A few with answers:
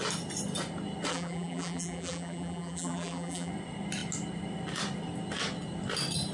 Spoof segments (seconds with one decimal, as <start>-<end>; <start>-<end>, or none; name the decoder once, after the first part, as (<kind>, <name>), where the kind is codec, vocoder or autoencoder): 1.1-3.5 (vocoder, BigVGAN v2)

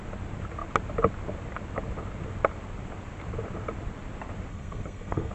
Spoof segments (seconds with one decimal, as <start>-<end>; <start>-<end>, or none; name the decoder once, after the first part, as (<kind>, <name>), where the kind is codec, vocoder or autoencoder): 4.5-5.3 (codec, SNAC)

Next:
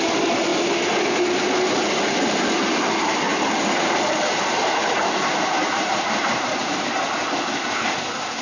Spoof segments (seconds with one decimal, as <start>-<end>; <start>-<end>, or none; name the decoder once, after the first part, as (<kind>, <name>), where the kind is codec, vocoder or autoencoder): 3.3-6.9 (vocoder, BigVGAN v2)

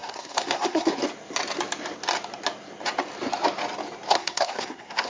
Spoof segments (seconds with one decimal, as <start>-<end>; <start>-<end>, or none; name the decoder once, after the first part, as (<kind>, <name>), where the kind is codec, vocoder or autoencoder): 0.0-1.0 (codec, SNAC); 4.1-5.1